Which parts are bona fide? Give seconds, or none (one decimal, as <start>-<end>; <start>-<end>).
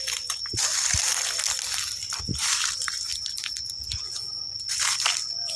0.0-5.6